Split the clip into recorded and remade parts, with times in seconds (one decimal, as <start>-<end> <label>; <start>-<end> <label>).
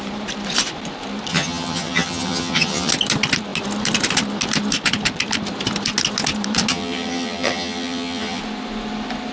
0.0-1.3 recorded; 1.3-2.9 remade; 2.9-6.7 recorded; 6.7-8.4 remade; 8.4-9.3 recorded